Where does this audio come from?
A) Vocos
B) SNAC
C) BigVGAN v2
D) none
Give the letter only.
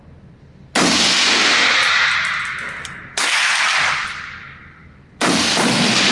D